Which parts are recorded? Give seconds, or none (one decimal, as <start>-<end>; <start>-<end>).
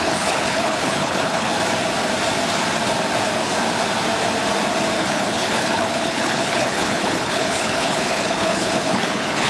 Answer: 1.5-5.0